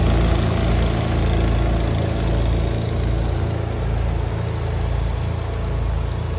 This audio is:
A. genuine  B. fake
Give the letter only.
A